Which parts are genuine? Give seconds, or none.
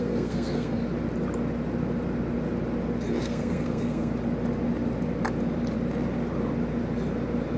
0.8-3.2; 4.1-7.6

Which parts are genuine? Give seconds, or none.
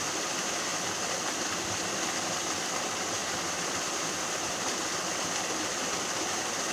0.0-6.7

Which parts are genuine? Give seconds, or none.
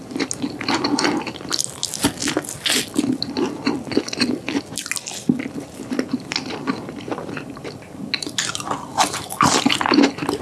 0.0-10.4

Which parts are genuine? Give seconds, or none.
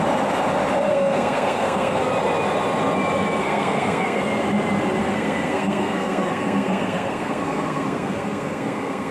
0.0-0.9; 2.0-3.4; 4.2-5.0